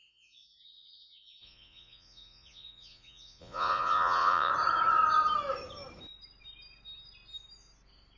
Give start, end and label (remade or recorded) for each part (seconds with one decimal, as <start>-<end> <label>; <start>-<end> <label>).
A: 0.0-4.5 remade; 4.5-8.2 recorded